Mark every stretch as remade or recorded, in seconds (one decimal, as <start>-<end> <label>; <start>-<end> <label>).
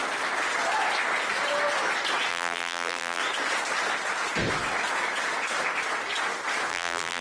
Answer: 0.0-2.3 recorded; 2.3-3.2 remade; 3.2-6.7 recorded; 6.7-7.2 remade